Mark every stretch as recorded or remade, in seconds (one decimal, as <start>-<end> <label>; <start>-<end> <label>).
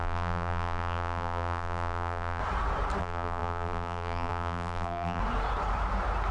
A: 0.0-2.4 remade; 2.4-3.0 recorded; 3.0-5.2 remade; 5.2-6.3 recorded